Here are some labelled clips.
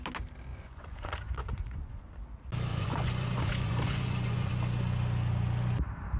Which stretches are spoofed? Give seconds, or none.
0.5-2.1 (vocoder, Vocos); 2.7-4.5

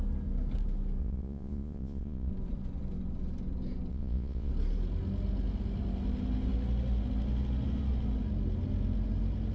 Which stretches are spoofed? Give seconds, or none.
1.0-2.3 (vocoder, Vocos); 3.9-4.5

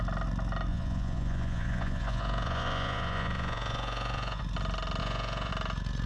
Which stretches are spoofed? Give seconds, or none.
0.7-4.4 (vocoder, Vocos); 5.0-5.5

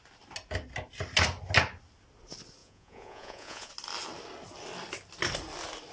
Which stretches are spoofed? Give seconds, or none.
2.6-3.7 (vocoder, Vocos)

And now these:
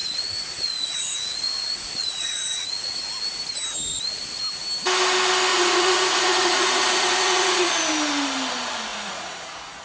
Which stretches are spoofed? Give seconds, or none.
0.0-3.0 (vocoder, Vocos); 5.5-7.7; 8.9-9.8

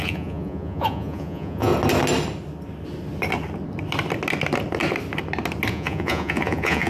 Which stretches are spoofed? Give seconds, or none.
0.0-1.7 (vocoder, Vocos); 5.7-6.9